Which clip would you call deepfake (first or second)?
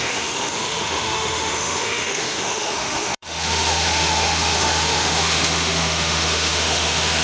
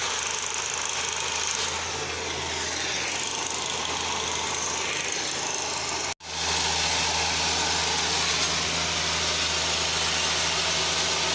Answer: first